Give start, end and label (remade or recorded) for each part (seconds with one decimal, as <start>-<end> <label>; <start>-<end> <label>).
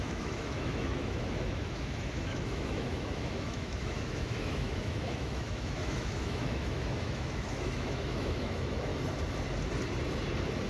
0.0-8.9 remade; 8.9-10.7 recorded